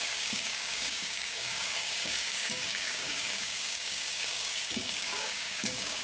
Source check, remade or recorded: remade